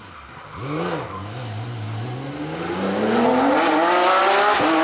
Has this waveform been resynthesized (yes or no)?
no